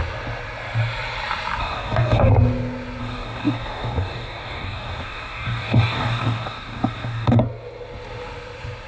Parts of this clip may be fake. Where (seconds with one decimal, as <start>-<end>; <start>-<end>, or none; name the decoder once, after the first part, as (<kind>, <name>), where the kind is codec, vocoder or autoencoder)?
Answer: 1.6-2.3 (codec, DAC); 3.0-7.4